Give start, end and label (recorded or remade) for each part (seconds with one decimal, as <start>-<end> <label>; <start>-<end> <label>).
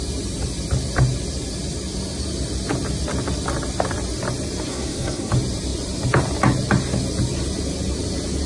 0.0-4.7 recorded; 4.7-5.3 remade; 5.3-8.5 recorded